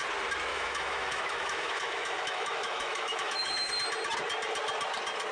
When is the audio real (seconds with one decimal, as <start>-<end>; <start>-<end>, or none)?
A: 0.0-0.5; 3.7-5.3